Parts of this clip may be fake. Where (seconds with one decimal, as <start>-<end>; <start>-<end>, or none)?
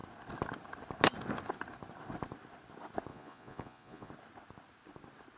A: 3.1-4.1